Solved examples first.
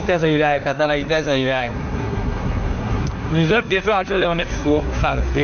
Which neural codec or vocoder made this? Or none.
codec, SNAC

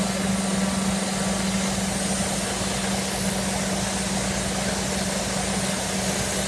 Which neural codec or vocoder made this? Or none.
none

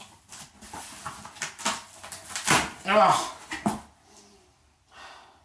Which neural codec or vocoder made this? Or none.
none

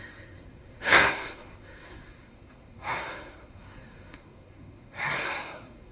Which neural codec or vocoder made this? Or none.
codec, SNAC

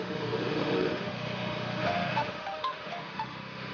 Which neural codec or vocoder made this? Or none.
autoencoder, DAC-VAE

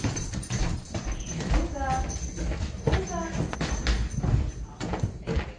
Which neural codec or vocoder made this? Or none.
none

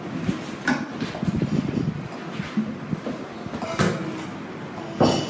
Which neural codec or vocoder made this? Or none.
none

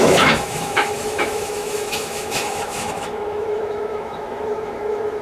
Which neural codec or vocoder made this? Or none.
autoencoder, DAC-VAE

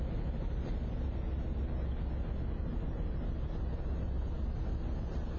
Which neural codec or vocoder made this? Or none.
none